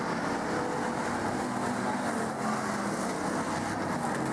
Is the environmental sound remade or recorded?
recorded